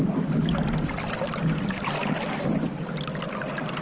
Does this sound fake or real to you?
real